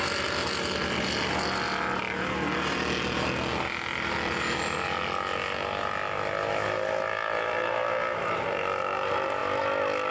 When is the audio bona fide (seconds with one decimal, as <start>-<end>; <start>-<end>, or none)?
0.0-10.1